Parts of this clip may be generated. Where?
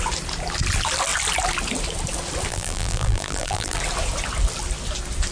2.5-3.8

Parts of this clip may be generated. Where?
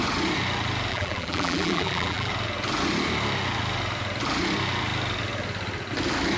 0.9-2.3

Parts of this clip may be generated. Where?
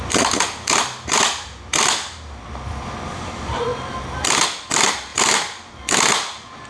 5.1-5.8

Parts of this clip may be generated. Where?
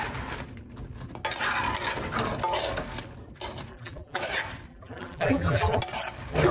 3.7-4.2; 4.7-5.8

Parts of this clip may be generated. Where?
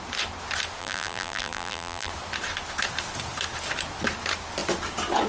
0.8-2.1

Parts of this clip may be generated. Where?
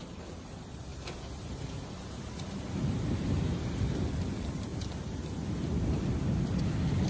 0.0-4.7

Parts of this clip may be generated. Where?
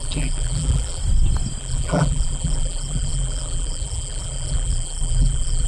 0.0-1.0; 1.6-5.7